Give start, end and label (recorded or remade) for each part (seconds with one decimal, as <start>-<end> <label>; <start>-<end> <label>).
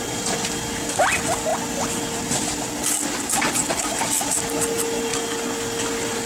0.0-6.3 recorded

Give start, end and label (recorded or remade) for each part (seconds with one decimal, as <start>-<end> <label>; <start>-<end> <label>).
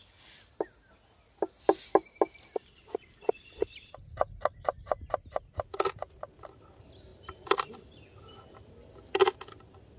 0.0-7.1 recorded; 7.1-7.7 remade; 7.7-10.0 recorded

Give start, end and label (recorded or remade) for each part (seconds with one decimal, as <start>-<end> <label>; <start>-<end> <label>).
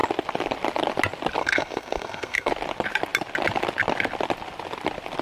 0.0-1.4 recorded; 1.4-2.5 remade; 2.5-5.2 recorded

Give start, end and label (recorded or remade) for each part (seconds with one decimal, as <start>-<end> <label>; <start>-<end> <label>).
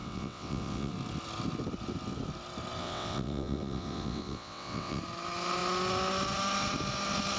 0.0-0.9 remade; 0.9-2.8 recorded; 2.8-5.0 remade; 5.0-7.4 recorded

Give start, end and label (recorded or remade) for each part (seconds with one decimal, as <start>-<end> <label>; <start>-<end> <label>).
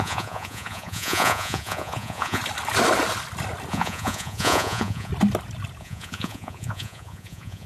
0.0-2.4 remade; 2.4-3.7 recorded; 3.7-5.1 remade; 5.1-5.8 recorded; 5.8-7.7 remade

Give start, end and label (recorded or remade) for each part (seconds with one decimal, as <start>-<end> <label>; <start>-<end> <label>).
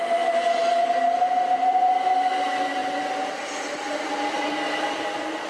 0.0-5.5 recorded